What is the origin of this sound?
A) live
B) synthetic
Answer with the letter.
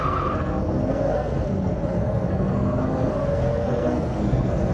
B